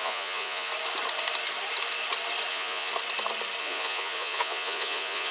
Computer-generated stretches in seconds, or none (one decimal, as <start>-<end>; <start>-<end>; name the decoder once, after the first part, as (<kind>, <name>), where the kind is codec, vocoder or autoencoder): 0.0-0.7 (vocoder, Vocos); 2.5-2.9; 3.6-5.3